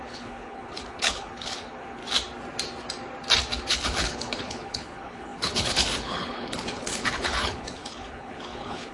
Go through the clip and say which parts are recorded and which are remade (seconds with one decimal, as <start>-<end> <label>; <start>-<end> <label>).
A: 0.0-2.0 remade; 2.0-3.7 recorded; 3.7-8.9 remade